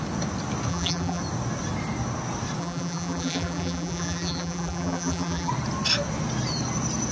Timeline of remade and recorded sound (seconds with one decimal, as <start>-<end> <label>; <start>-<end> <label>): 0.0-0.7 recorded; 0.7-1.2 remade; 1.2-2.6 recorded; 2.6-5.5 remade; 5.5-7.1 recorded